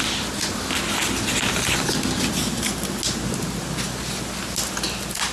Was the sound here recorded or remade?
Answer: recorded